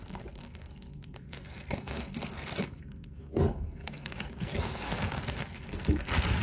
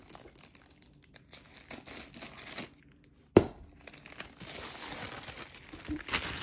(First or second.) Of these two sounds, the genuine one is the second